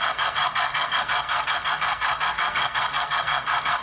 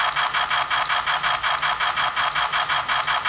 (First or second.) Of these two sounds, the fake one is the first